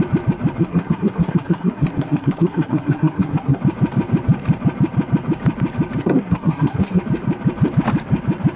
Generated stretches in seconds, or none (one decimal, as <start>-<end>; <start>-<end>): 0.6-3.6; 6.0-7.0